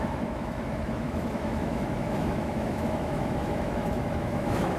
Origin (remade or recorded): remade